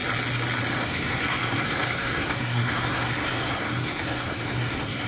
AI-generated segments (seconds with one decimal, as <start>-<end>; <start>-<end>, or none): 0.7-5.1